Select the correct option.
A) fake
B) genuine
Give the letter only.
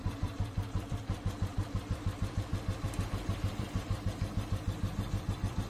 A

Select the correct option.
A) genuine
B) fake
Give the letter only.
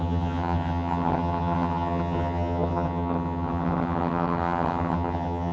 B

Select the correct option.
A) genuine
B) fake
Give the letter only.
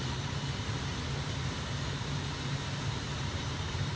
B